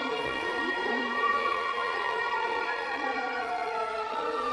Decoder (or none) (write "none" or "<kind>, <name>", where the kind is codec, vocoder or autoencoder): vocoder, Vocos